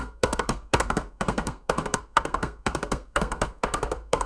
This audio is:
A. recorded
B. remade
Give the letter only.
B